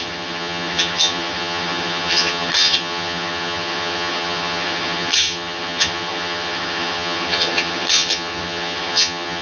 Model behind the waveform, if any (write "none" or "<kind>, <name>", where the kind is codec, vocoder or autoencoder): vocoder, HiFi-GAN